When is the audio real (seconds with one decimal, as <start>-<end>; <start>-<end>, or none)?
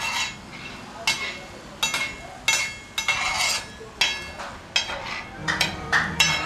0.0-5.4